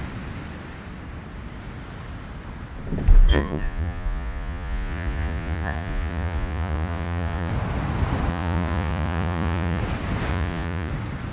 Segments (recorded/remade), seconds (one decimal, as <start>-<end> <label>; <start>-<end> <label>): 0.0-3.3 recorded; 3.3-7.5 remade; 7.5-8.3 recorded; 8.3-9.8 remade; 9.8-10.3 recorded; 10.3-10.9 remade; 10.9-11.3 recorded